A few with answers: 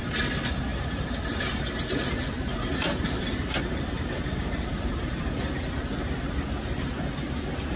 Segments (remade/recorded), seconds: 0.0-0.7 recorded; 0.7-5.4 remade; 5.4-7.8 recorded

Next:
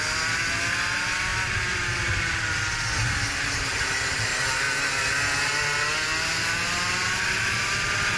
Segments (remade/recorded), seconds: 0.0-8.2 recorded

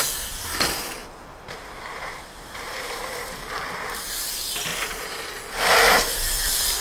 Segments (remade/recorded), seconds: 0.0-1.0 recorded; 1.0-3.0 remade; 3.0-4.7 recorded; 4.7-5.3 remade; 5.3-6.8 recorded